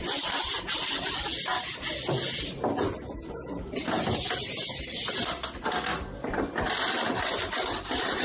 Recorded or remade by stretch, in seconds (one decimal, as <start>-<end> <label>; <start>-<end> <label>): 0.0-8.2 recorded